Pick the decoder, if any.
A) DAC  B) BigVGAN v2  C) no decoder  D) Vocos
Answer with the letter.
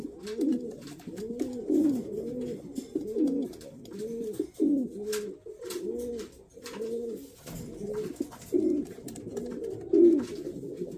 C